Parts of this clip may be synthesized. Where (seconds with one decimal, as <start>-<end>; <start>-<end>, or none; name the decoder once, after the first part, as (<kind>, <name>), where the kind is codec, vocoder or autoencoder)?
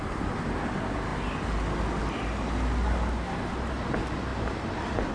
none